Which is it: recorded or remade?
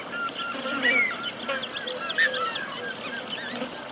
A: remade